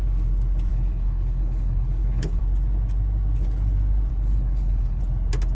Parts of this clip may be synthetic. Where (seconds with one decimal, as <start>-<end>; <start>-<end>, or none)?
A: 0.7-2.4; 4.1-5.0